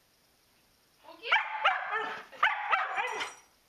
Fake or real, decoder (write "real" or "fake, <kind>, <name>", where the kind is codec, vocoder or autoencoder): real